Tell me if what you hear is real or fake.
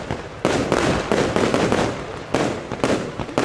real